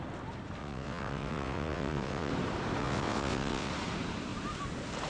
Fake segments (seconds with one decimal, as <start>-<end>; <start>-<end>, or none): 0.6-2.3; 2.8-3.7

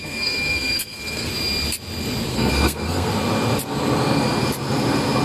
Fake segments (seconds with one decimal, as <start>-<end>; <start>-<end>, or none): 0.0-1.3; 2.3-3.1

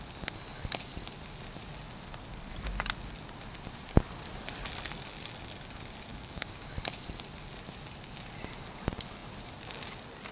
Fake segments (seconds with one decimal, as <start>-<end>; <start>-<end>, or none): 6.1-6.7

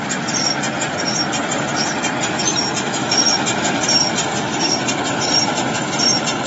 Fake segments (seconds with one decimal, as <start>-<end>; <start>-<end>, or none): none